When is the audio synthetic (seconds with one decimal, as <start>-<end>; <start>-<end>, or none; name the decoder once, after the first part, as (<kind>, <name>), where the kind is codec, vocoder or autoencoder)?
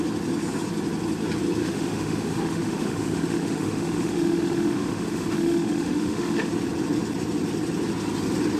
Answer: 1.6-6.5 (autoencoder, DAC-VAE)